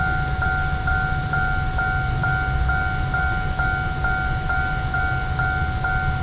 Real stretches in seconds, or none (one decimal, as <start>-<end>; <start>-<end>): 0.0-6.2

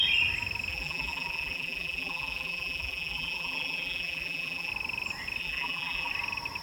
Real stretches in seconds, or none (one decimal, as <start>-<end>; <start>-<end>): 0.0-0.7; 4.7-5.4; 6.1-6.6

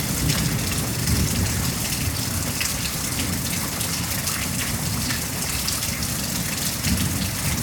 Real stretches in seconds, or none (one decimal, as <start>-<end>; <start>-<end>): 0.0-4.2; 5.2-7.6

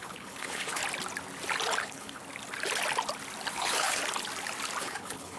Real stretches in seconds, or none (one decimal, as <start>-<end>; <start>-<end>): 0.8-1.8; 2.2-3.5; 4.0-4.8

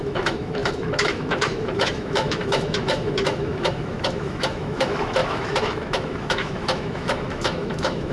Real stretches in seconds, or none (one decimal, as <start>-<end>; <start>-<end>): none